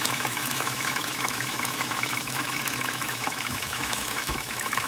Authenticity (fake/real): fake